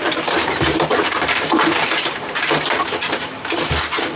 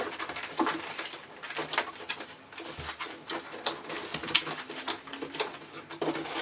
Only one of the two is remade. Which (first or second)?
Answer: first